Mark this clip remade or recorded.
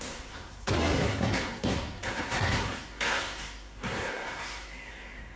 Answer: remade